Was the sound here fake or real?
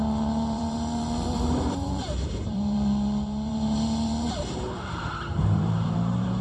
fake